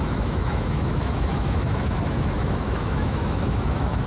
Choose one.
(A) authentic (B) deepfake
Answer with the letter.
B